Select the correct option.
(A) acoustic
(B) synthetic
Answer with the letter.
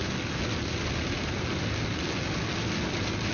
A